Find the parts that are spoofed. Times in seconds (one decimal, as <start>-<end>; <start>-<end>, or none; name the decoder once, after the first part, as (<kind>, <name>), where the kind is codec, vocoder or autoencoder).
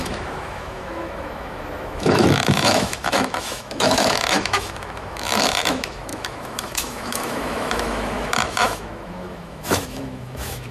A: 0.0-10.7 (autoencoder, DAC-VAE)